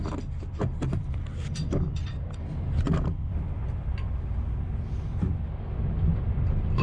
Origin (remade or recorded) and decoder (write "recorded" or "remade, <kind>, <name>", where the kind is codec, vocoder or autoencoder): recorded